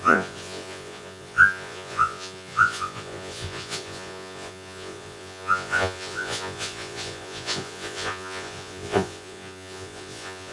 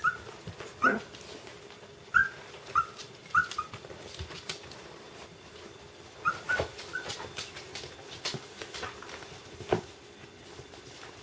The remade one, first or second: first